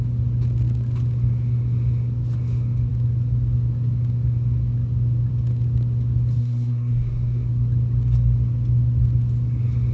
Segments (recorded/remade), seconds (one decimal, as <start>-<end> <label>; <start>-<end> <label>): 0.0-6.4 recorded; 6.4-7.5 remade; 7.5-9.9 recorded